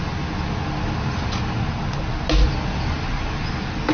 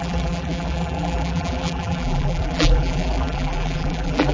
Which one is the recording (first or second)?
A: first